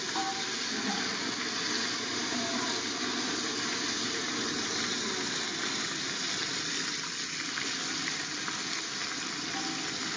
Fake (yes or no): no